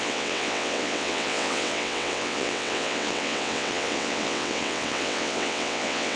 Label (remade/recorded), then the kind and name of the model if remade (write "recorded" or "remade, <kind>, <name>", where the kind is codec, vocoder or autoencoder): remade, vocoder, WaveNeXt